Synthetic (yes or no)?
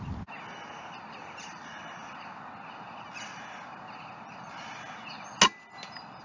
no